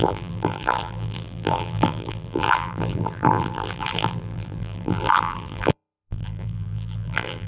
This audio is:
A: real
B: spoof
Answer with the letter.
B